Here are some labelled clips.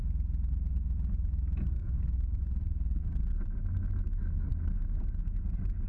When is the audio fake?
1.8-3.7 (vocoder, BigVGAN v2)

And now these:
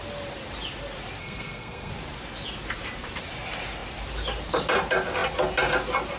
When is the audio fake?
1.2-1.9 (codec, SNAC)

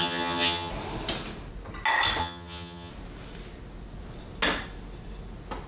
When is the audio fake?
0.0-0.7 (vocoder, HiFi-GAN); 2.2-2.9

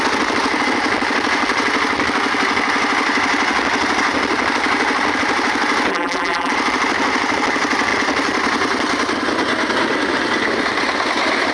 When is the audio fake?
5.9-6.5 (vocoder, BigVGAN v2)